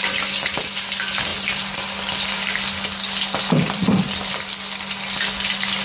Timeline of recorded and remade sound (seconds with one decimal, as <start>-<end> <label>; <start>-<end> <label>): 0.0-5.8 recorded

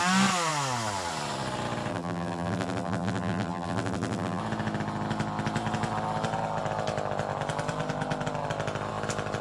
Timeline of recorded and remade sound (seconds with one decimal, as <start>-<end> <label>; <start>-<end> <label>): 0.0-1.9 recorded; 1.9-4.4 remade; 4.4-9.4 recorded

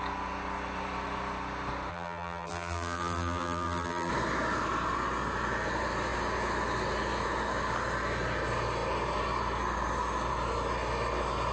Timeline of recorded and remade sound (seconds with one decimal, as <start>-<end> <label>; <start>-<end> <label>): 0.0-1.9 recorded; 1.9-4.1 remade; 4.1-11.5 recorded